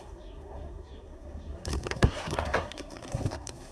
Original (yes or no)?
no